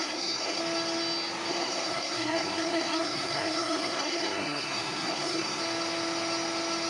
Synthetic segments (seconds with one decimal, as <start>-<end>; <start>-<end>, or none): 0.0-0.6; 1.5-5.6